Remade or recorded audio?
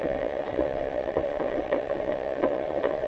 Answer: remade